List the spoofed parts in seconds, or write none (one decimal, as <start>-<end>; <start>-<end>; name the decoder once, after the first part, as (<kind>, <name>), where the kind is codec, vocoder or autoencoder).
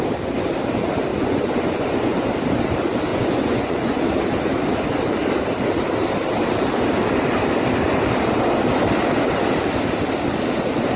1.1-2.3 (vocoder, Vocos); 3.1-4.0